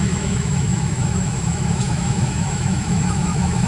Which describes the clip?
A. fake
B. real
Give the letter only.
A